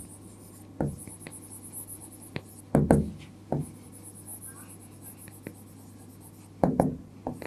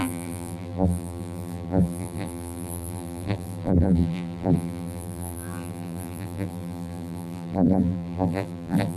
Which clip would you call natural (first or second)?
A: first